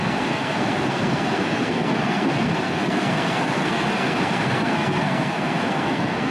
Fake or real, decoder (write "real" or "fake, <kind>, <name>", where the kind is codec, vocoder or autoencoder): fake, codec, SNAC